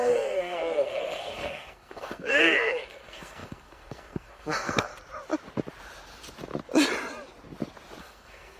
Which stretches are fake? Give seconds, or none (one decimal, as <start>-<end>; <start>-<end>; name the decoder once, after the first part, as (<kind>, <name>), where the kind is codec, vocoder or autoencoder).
0.0-4.9 (codec, SNAC); 8.0-8.6